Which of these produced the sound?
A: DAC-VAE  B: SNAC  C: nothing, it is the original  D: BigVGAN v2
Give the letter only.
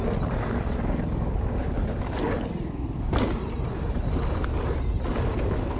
C